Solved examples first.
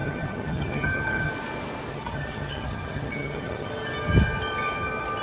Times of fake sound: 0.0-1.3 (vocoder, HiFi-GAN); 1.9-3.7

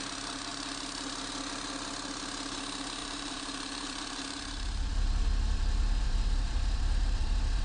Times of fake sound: 3.0-7.6 (vocoder, BigVGAN v2)

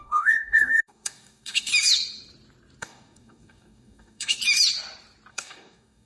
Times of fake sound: 0.0-1.7 (codec, DAC); 2.8-4.4; 5.3-6.1

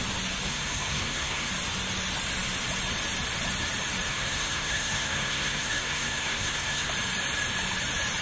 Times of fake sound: 0.5-1.5 (codec, SNAC); 4.1-6.9

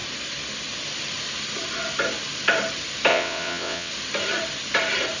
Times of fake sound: 3.1-3.9 (vocoder, WaveNeXt)